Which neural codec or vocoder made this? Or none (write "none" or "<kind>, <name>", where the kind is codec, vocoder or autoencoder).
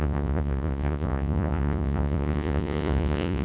vocoder, Vocos